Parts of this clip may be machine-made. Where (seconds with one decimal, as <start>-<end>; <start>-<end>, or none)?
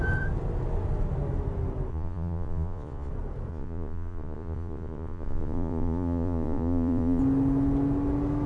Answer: 1.9-3.1; 3.5-7.2